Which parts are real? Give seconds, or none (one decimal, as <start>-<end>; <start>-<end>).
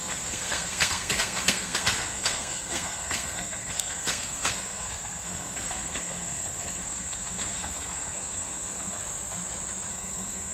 9.0-9.9